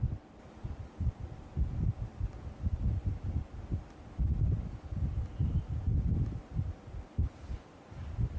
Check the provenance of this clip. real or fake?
real